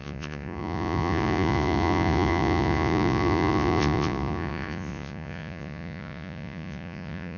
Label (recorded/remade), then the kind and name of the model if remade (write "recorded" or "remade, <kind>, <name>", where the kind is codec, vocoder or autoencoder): remade, vocoder, Vocos